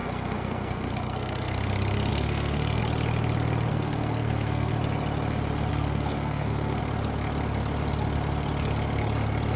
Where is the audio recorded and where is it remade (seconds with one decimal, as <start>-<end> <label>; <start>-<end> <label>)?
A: 0.0-1.6 remade; 1.6-2.1 recorded; 2.1-2.8 remade; 2.8-3.7 recorded; 3.7-4.7 remade; 4.7-5.7 recorded; 5.7-6.8 remade; 6.8-9.6 recorded